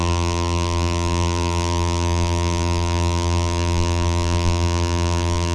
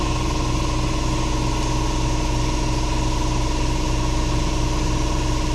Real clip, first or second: second